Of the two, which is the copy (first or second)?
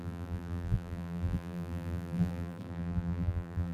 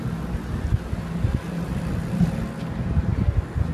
first